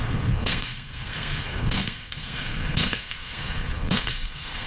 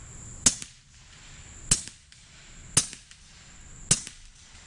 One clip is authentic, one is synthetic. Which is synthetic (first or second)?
first